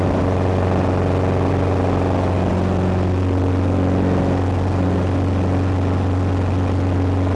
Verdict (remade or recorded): recorded